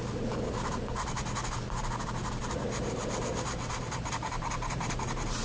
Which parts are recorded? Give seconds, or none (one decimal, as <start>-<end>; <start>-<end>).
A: 0.0-2.4